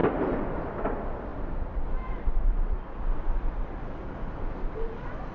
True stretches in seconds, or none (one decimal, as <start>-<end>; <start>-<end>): 0.0-5.3